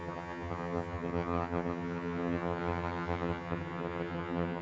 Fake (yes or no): yes